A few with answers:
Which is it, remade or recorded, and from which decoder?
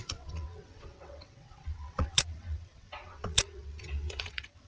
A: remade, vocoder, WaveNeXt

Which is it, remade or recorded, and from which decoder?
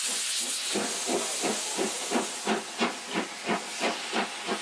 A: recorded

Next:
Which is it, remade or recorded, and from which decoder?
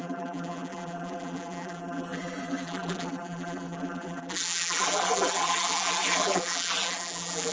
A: remade, vocoder, BigVGAN v2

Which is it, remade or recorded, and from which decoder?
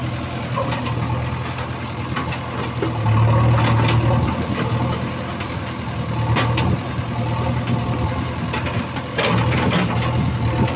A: recorded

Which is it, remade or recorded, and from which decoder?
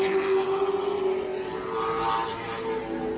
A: recorded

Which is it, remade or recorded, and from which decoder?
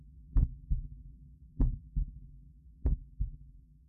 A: remade, vocoder, BigVGAN v2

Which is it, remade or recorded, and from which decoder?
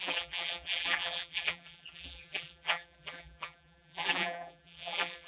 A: remade, vocoder, BigVGAN v2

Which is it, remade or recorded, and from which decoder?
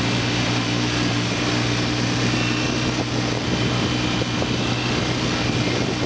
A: recorded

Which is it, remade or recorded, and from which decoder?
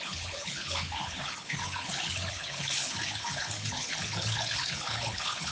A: remade, codec, HILCodec